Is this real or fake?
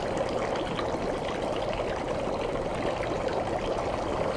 real